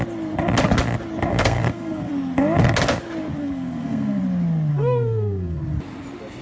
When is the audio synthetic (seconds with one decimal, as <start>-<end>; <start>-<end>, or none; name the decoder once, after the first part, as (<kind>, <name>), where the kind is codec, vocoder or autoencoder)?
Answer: 1.3-2.1 (codec, SNAC); 3.4-4.2; 4.7-5.6

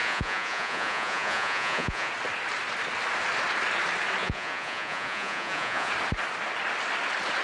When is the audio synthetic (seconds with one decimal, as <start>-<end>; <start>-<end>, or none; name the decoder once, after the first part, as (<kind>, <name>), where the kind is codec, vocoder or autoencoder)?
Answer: 0.0-2.1 (vocoder, Vocos); 4.2-5.9

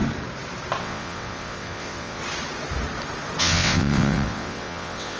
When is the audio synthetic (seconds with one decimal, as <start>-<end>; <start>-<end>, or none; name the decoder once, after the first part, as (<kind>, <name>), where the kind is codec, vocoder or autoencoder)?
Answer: 0.8-2.2 (vocoder, WaveNeXt); 3.4-5.2

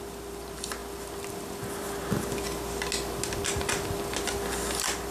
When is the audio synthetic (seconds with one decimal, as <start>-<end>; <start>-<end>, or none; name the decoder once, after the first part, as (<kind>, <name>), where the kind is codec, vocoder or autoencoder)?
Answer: none

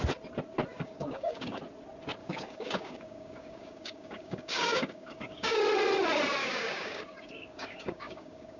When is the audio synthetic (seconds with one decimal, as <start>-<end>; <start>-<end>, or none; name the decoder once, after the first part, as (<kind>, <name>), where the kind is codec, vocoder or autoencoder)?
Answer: 0.7-1.6 (codec, DAC); 2.2-5.6; 6.4-8.6

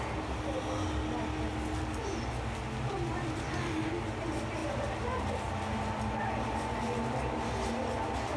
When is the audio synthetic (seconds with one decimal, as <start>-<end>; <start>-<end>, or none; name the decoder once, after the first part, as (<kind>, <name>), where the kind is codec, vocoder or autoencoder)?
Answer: none

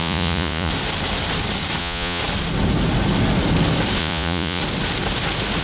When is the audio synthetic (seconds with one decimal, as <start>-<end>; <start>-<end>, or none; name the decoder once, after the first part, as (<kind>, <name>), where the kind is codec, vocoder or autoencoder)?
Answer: 0.0-0.7 (vocoder, Vocos); 1.8-2.2; 4.0-4.6

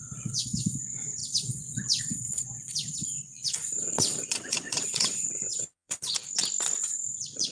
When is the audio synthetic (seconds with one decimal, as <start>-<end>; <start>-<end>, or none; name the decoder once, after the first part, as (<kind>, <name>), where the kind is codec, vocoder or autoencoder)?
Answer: 0.0-6.1 (vocoder, Vocos); 6.8-7.5